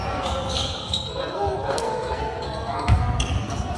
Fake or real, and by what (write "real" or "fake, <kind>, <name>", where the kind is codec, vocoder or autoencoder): fake, codec, SNAC